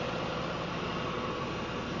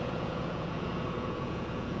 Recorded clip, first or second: first